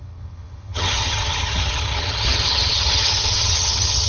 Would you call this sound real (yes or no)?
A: no